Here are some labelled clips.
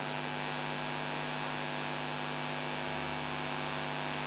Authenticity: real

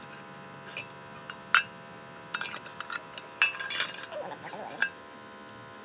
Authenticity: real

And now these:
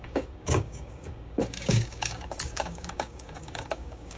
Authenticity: fake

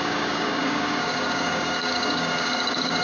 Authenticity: fake